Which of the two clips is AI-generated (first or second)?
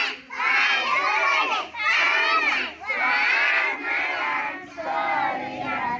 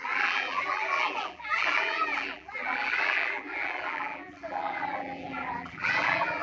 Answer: second